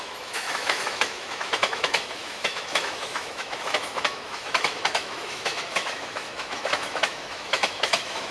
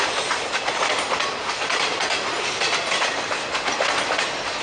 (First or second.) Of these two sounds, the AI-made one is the first